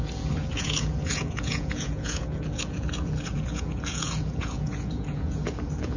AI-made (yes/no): yes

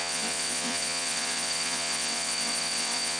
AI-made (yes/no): yes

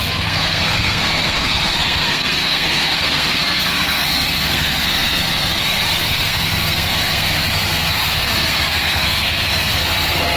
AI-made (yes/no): yes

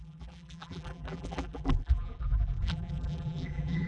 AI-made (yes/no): yes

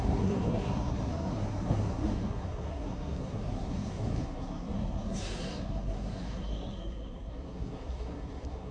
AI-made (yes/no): yes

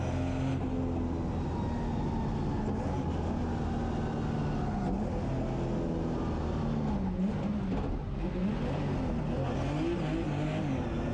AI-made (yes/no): no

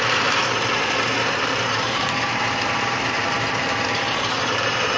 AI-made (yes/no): yes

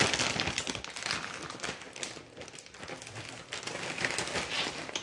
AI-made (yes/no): no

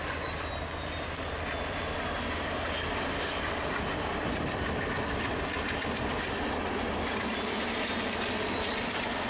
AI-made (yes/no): no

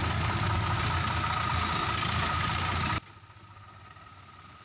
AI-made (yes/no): no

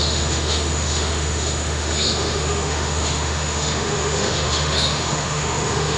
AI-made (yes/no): yes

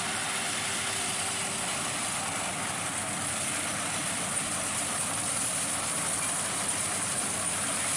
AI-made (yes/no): yes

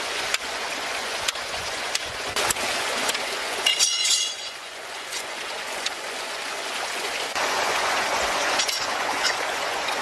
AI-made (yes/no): yes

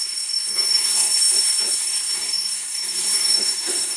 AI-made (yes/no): yes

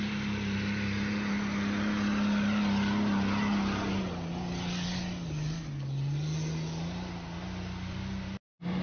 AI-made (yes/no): no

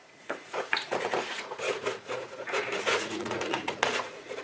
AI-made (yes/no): yes